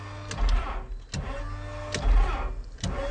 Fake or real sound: real